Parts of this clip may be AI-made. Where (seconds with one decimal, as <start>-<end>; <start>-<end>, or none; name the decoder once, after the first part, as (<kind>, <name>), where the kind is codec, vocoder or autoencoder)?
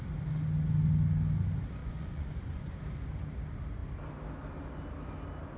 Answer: 1.8-2.7 (vocoder, Vocos)